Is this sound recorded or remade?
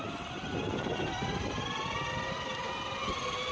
recorded